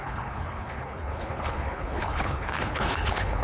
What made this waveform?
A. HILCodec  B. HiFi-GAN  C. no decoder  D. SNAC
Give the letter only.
A